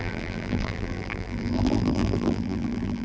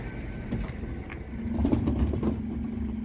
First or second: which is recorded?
second